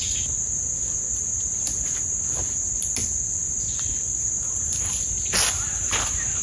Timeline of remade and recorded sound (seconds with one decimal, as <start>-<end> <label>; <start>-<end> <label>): 0.0-3.0 recorded; 3.0-4.2 remade; 4.2-6.4 recorded

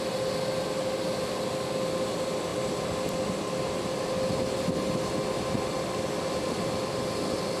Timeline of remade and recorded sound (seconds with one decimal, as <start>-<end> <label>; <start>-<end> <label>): 0.0-7.6 recorded

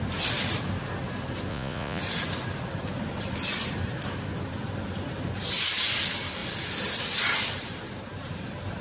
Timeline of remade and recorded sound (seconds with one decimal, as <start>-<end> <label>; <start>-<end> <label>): 0.0-1.5 recorded; 1.5-2.0 remade; 2.0-8.8 recorded

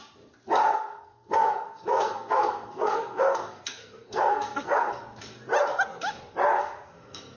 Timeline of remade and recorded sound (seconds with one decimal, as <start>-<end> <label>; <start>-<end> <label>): 0.0-0.6 recorded; 0.6-5.0 remade; 5.0-6.5 recorded; 6.5-7.4 remade

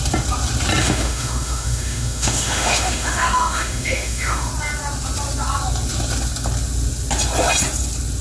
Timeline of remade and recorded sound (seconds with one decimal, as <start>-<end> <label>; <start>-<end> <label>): 0.0-0.8 recorded; 0.8-4.5 remade; 4.5-8.2 recorded